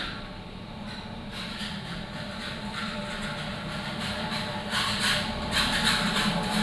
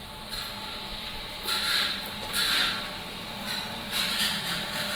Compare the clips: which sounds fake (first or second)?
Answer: first